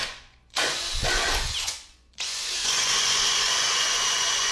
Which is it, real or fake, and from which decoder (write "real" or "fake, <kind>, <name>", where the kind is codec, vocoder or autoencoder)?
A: fake, vocoder, Vocos